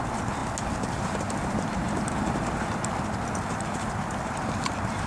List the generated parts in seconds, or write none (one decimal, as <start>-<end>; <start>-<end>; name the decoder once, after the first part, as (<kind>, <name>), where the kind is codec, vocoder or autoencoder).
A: 0.0-0.4 (vocoder, BigVGAN v2); 0.9-5.1